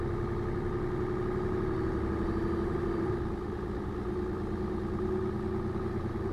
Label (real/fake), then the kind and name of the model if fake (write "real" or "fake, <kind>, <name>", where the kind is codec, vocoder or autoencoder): real